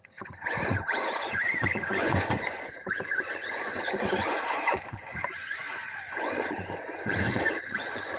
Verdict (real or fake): fake